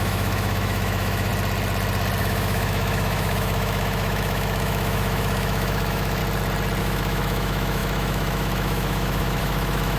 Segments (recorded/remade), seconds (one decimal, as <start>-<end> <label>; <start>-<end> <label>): 0.0-1.3 remade; 1.3-2.2 recorded; 2.2-6.2 remade; 6.2-6.8 recorded; 6.8-10.0 remade